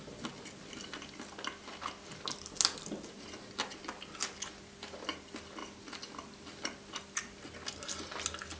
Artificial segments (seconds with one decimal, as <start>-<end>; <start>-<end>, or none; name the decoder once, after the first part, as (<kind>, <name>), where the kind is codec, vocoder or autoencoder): none